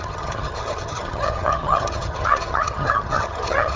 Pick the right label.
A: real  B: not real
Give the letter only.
B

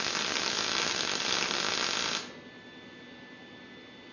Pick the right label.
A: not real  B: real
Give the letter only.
B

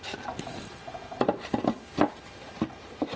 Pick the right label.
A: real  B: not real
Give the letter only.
A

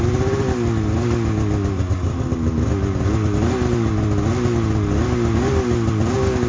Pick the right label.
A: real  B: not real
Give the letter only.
A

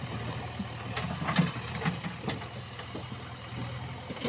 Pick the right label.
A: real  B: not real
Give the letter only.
A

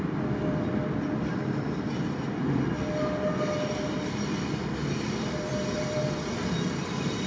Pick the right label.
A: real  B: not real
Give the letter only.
A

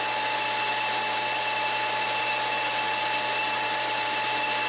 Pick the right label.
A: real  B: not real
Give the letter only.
A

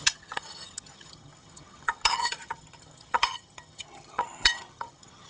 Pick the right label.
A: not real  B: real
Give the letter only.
A